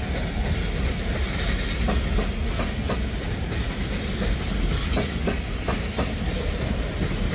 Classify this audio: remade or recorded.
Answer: recorded